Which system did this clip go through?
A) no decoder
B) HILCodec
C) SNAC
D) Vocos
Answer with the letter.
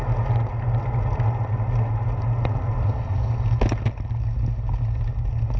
A